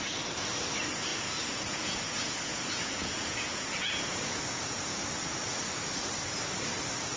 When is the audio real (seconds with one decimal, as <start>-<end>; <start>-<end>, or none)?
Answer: 0.0-1.1; 5.0-7.2